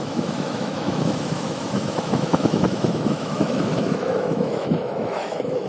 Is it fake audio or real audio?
fake